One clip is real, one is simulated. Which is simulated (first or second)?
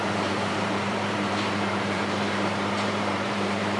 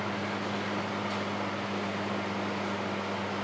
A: first